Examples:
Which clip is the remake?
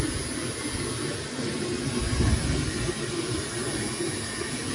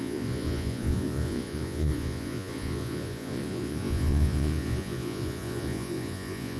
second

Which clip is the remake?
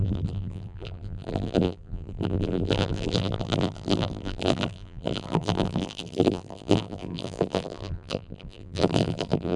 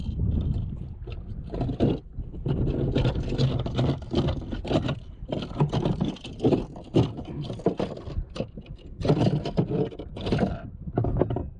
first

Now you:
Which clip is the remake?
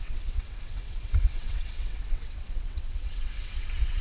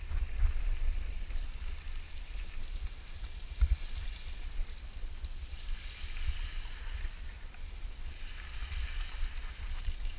first